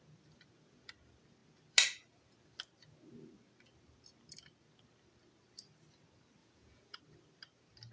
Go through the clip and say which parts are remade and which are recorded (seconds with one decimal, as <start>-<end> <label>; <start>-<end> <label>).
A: 0.0-6.4 recorded; 6.4-7.0 remade; 7.0-7.9 recorded